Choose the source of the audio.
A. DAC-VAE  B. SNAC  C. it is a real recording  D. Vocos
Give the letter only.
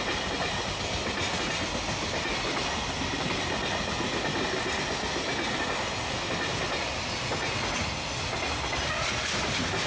C